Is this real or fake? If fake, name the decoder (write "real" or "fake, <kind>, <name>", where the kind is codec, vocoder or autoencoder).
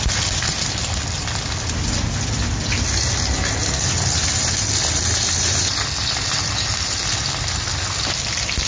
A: real